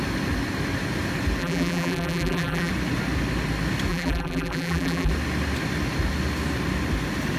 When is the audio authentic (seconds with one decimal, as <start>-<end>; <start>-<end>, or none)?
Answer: 0.0-1.4; 2.7-3.9; 5.1-7.4